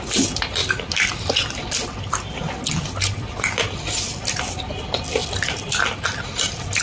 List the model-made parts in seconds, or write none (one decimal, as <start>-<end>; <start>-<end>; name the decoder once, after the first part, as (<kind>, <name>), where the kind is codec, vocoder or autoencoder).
0.6-4.4 (vocoder, BigVGAN v2); 5.2-6.0